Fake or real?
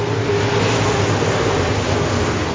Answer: real